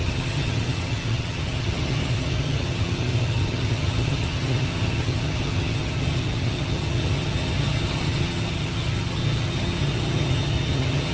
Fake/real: fake